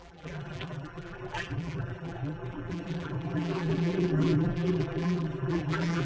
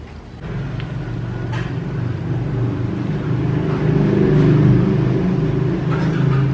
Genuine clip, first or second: second